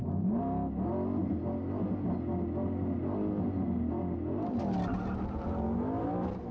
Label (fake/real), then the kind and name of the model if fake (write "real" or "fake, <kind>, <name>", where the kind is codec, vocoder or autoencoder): real